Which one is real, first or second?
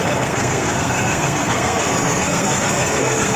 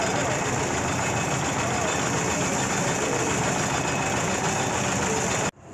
second